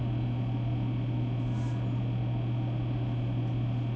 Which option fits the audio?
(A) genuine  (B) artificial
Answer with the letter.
A